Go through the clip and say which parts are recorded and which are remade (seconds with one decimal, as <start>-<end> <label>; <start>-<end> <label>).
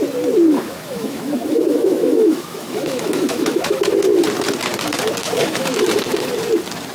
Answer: 0.0-0.5 recorded; 0.5-3.9 remade; 3.9-5.2 recorded; 5.2-6.3 remade; 6.3-6.9 recorded